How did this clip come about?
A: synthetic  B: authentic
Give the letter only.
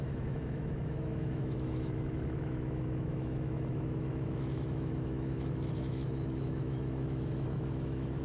A